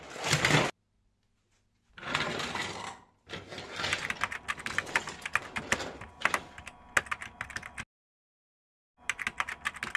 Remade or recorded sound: recorded